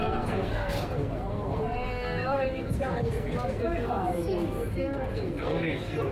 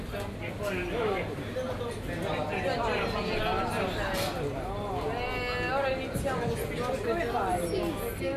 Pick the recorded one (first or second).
second